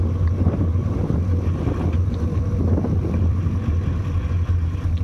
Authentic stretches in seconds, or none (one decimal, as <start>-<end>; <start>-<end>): 0.0-0.8; 3.4-5.0